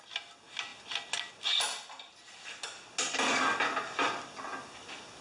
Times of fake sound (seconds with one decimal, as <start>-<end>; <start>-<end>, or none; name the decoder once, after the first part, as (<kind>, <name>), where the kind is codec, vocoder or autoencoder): none